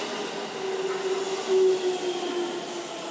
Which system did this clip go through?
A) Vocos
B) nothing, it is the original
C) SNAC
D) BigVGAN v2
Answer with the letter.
B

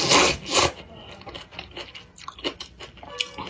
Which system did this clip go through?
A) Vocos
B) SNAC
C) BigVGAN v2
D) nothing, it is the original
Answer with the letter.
D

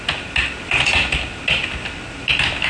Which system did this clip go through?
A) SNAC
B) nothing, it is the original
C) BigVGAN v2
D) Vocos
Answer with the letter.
B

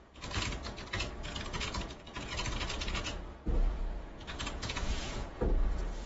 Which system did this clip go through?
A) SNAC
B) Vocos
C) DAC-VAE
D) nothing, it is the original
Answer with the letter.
B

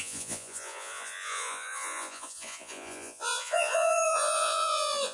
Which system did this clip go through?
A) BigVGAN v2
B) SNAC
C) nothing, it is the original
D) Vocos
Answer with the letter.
D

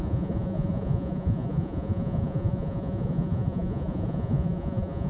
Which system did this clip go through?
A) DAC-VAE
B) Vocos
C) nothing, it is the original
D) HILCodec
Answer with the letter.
B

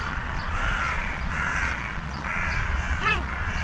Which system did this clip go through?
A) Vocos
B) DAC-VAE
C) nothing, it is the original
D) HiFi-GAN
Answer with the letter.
A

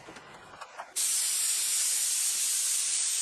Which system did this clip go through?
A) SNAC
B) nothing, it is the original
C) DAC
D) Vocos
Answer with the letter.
B